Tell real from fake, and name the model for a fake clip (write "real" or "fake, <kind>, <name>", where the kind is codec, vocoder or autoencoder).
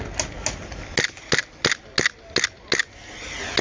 real